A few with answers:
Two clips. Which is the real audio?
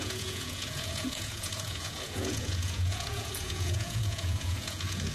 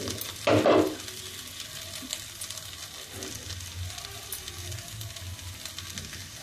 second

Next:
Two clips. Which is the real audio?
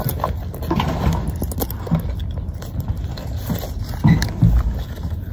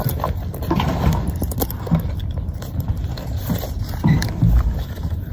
first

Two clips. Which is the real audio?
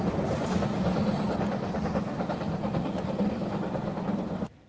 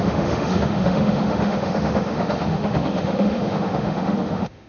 first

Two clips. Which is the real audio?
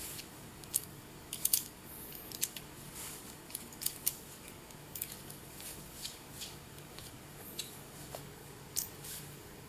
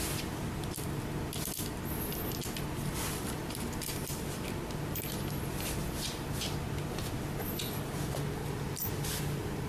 second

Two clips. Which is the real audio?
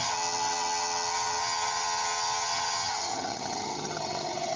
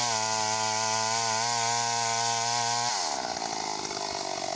second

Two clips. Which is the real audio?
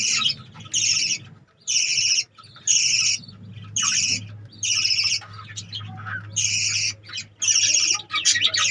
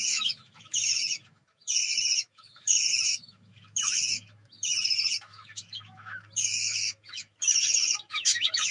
first